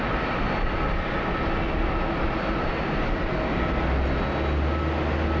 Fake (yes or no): no